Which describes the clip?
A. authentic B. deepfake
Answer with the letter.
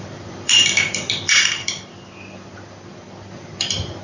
B